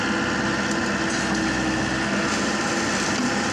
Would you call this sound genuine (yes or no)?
yes